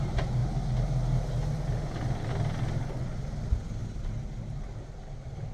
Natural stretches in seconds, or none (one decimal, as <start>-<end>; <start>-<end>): 0.0-5.5